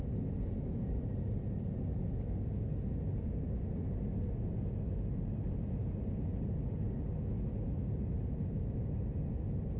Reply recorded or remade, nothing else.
recorded